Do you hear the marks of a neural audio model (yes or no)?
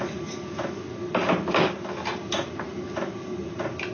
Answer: no